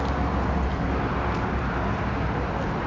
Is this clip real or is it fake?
real